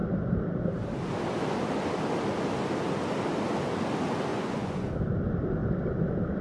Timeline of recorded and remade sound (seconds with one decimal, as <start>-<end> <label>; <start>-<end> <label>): 0.0-4.3 recorded; 4.3-4.9 remade; 4.9-6.4 recorded